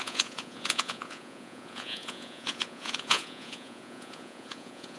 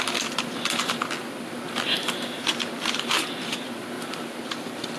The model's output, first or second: first